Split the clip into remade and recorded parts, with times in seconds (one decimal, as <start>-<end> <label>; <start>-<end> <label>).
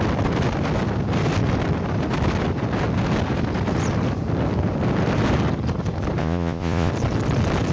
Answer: 0.0-6.2 recorded; 6.2-6.9 remade; 6.9-7.7 recorded